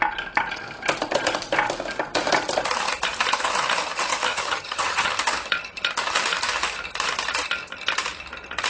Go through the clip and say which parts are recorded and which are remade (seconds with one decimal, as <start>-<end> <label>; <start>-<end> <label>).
0.0-4.3 recorded; 4.3-5.1 remade; 5.1-8.7 recorded